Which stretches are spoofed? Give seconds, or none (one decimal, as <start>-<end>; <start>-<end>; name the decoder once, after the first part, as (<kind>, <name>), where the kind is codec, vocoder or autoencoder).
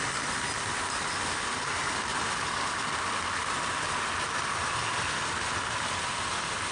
none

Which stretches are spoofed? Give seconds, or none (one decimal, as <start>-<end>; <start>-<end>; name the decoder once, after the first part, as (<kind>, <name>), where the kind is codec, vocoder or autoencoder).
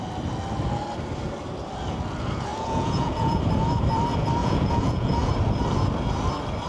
2.5-3.4 (vocoder, Vocos); 4.4-5.3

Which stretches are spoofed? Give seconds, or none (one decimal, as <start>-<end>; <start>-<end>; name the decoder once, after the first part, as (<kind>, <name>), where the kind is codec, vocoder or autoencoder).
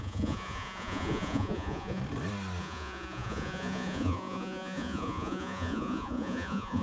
0.0-2.0 (vocoder, Vocos); 2.6-6.8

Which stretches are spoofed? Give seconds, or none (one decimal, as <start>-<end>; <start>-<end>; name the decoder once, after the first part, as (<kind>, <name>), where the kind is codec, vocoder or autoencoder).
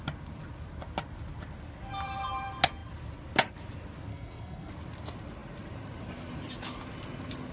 4.1-4.7 (codec, SNAC)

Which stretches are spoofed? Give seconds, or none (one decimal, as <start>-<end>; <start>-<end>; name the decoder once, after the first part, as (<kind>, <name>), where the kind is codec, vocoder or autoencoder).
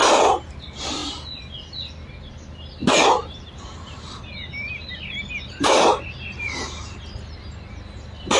2.8-7.4 (vocoder, BigVGAN v2)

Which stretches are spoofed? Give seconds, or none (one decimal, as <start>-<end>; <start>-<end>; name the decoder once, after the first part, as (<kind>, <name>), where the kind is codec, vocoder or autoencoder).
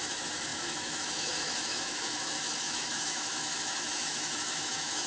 0.0-5.1 (autoencoder, DAC-VAE)